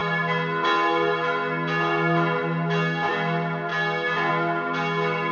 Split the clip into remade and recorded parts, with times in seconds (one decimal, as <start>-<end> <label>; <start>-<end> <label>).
0.0-5.3 recorded